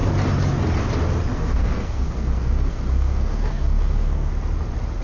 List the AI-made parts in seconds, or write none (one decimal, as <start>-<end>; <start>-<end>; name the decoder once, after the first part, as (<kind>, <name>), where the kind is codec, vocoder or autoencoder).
1.3-4.3 (codec, SNAC)